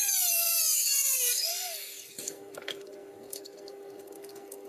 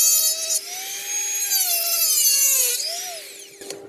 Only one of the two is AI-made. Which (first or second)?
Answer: first